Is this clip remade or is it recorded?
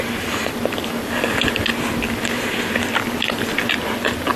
recorded